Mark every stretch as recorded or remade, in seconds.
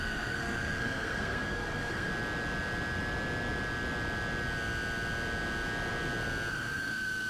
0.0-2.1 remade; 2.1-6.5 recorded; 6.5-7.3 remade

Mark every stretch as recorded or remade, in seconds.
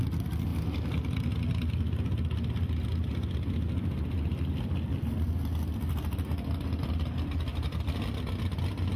0.0-9.0 recorded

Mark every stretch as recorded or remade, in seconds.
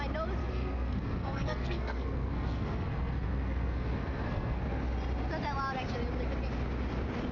0.0-0.4 recorded; 0.4-4.6 remade; 4.6-7.3 recorded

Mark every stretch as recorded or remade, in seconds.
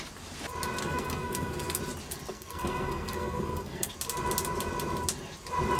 0.0-0.8 recorded; 0.8-1.8 remade; 1.8-2.3 recorded; 2.3-3.9 remade; 3.9-5.8 recorded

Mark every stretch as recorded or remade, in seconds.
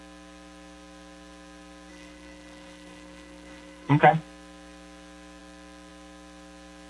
0.0-1.9 recorded; 1.9-4.0 remade; 4.0-6.9 recorded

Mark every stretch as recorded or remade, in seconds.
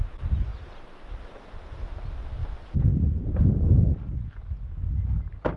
0.0-5.6 recorded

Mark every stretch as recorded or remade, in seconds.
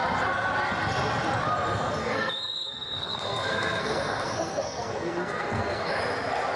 0.0-2.0 recorded; 2.0-6.0 remade; 6.0-6.6 recorded